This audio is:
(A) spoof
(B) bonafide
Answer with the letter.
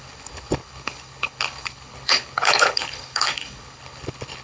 A